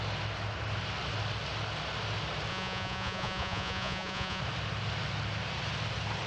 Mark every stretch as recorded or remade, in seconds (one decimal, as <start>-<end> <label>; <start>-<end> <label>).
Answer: 0.0-2.5 recorded; 2.5-4.4 remade; 4.4-6.3 recorded

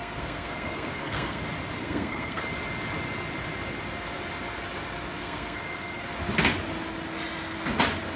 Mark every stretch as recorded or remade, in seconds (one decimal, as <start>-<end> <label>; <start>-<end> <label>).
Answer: 0.0-1.4 remade; 1.4-1.8 recorded; 1.8-2.5 remade; 2.5-5.2 recorded; 5.2-6.0 remade; 6.0-8.2 recorded

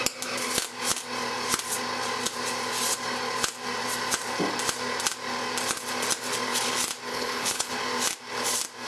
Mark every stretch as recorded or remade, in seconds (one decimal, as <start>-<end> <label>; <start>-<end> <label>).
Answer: 0.0-7.1 recorded; 7.1-7.7 remade; 7.7-8.9 recorded

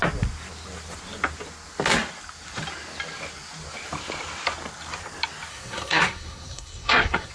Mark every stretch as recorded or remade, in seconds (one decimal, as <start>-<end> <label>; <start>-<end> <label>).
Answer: 0.0-5.5 recorded; 5.5-7.3 remade

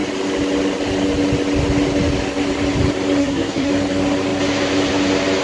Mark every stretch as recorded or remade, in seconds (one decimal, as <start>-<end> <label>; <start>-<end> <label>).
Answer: 0.0-3.2 recorded; 3.2-3.7 remade; 3.7-5.4 recorded

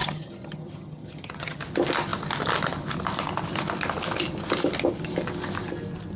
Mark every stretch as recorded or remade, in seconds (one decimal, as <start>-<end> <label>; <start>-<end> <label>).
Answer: 0.0-1.6 remade; 1.6-6.2 recorded

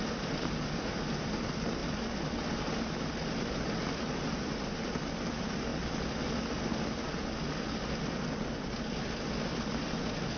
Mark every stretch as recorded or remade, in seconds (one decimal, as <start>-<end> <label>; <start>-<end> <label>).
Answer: 0.0-10.4 recorded

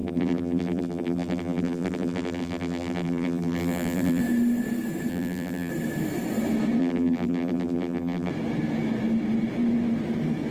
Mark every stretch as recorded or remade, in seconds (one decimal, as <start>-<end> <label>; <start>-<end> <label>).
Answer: 0.0-4.2 remade; 4.2-5.1 recorded; 5.1-5.7 remade; 5.7-6.8 recorded; 6.8-8.3 remade; 8.3-10.5 recorded